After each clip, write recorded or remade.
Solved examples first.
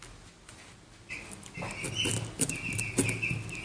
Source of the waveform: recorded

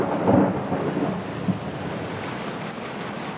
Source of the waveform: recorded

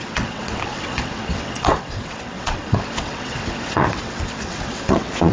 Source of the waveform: remade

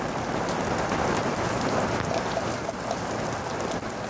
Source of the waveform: recorded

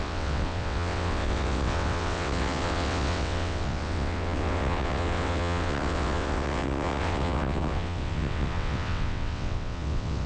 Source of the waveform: remade